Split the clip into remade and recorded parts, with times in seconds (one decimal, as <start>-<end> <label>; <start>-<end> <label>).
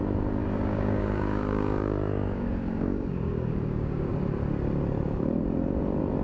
0.0-0.4 recorded; 0.4-4.1 remade; 4.1-6.2 recorded